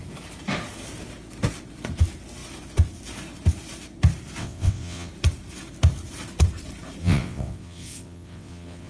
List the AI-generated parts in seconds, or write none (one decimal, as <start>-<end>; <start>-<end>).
4.4-5.1; 7.0-8.9